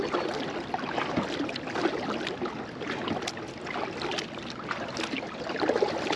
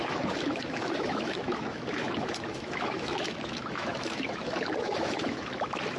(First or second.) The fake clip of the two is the second